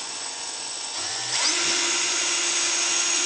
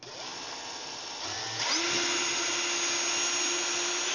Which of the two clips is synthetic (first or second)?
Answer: first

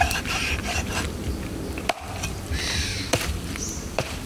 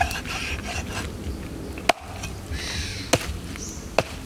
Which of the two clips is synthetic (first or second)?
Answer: first